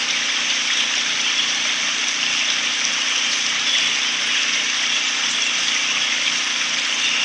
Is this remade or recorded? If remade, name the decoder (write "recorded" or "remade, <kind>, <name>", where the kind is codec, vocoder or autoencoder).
recorded